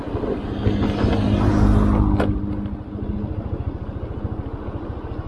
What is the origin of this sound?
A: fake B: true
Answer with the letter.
B